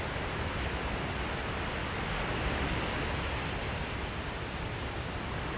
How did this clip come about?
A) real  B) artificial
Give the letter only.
A